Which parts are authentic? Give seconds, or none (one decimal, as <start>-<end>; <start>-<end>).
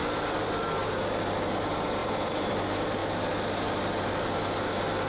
0.7-2.0; 2.6-5.1